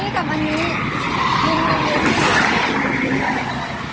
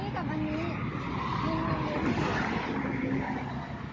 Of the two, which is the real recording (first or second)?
second